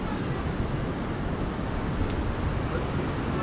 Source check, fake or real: real